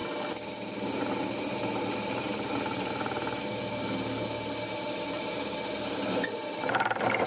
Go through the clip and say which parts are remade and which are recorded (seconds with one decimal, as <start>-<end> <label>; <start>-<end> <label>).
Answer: 0.0-7.3 recorded